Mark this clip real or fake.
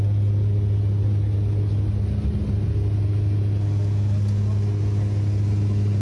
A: real